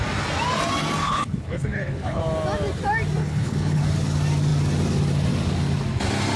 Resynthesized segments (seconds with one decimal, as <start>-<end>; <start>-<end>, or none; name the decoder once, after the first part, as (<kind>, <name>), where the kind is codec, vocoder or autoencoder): 1.0-2.2 (codec, HILCodec); 3.2-3.8